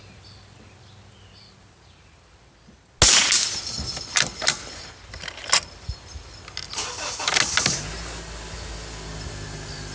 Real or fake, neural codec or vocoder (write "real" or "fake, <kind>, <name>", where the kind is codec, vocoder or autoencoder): real